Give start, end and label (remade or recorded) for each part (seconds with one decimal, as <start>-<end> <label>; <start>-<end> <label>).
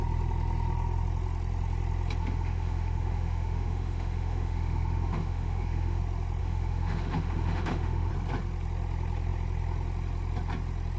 0.0-2.2 recorded; 2.2-6.0 remade; 6.0-6.4 recorded; 6.4-8.1 remade; 8.1-11.0 recorded